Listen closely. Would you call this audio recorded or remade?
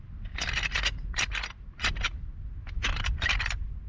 recorded